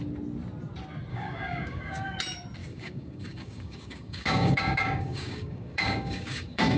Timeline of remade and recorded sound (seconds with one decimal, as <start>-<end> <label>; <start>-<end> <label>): 0.0-1.1 recorded; 1.1-2.2 remade; 2.2-2.6 recorded; 2.6-6.8 remade